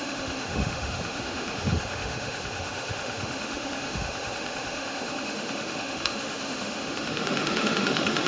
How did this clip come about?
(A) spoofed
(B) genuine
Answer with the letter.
A